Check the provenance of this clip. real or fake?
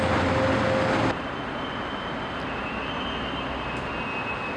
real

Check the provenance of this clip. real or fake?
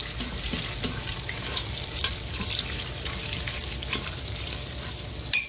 real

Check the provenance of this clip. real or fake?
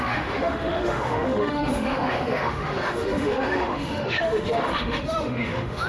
fake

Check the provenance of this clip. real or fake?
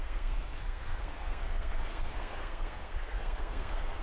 fake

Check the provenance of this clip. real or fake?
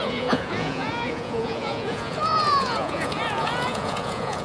fake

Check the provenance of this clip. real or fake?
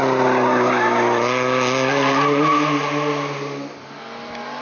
real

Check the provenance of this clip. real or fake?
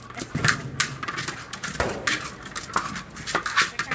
real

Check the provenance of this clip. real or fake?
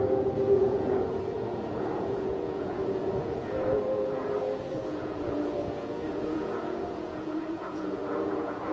fake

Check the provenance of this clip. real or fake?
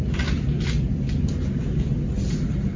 real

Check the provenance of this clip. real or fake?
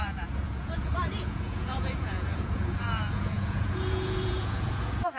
fake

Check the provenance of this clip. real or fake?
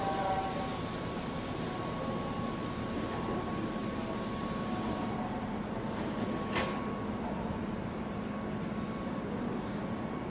real